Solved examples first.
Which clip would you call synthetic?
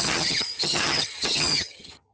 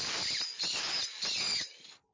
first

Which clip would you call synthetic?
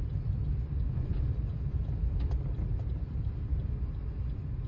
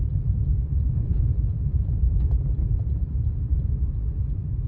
second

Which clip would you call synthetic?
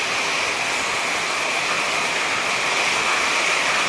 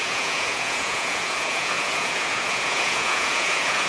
second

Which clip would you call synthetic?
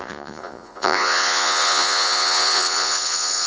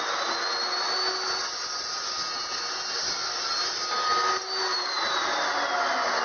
first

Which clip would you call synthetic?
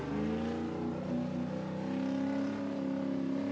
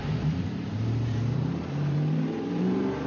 second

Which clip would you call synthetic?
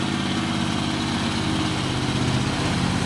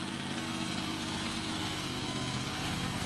second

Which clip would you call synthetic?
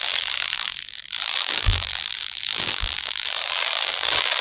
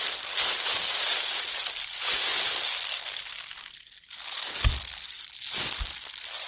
first